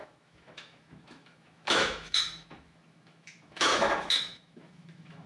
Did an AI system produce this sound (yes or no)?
yes